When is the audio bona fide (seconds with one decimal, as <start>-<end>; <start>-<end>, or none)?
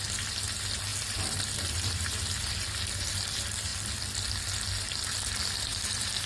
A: 0.0-0.9; 2.5-5.7